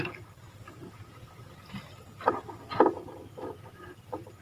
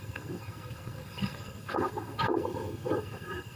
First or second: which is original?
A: first